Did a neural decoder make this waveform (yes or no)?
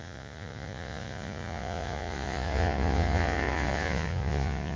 yes